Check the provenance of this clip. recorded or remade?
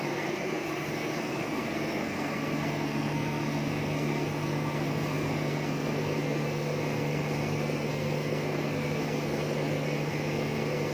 remade